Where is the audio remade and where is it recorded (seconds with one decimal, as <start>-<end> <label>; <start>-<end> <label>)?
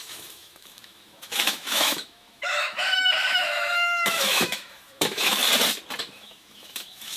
0.0-5.4 remade; 5.4-6.0 recorded; 6.0-7.2 remade